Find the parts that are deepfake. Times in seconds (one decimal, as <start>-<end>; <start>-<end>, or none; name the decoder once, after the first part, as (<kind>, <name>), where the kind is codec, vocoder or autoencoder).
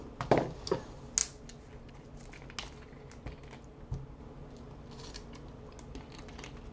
none